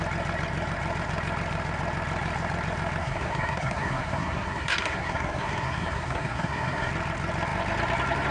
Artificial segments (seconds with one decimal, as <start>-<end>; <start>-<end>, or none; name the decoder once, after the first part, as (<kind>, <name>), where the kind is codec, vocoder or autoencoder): 3.0-6.9 (codec, SNAC)